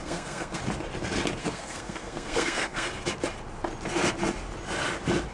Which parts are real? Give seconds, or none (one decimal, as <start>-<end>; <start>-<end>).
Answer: 0.6-1.4; 2.9-5.3